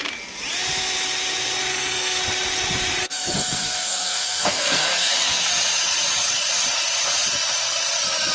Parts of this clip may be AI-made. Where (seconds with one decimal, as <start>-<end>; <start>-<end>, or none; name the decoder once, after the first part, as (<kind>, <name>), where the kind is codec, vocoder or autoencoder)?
1.7-2.2 (codec, SNAC); 3.0-5.5